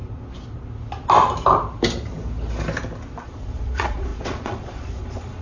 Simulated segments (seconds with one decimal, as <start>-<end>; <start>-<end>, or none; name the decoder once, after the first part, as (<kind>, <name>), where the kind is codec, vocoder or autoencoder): 3.2-5.4 (vocoder, Vocos)